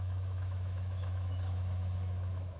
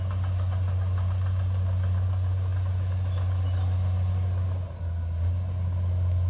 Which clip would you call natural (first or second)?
second